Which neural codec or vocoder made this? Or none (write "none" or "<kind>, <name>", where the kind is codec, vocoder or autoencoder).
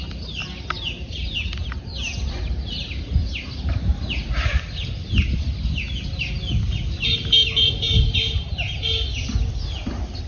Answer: none